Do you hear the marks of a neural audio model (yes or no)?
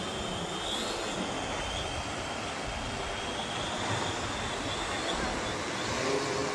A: no